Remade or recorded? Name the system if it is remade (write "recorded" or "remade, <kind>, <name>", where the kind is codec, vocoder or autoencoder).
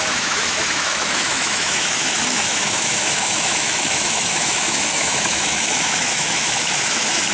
remade, autoencoder, DAC-VAE